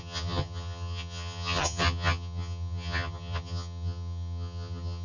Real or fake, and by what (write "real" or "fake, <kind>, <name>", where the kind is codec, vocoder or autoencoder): fake, vocoder, HiFi-GAN